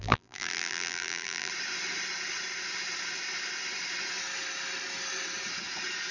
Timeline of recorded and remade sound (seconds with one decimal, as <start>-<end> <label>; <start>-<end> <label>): 0.0-1.5 remade; 1.5-6.1 recorded